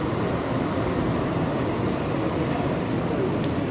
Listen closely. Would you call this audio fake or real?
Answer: real